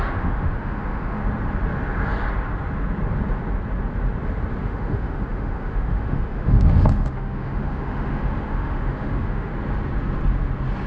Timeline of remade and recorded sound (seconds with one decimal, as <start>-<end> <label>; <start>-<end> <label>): 0.0-1.2 remade; 1.2-4.6 recorded; 4.6-9.5 remade; 9.5-10.9 recorded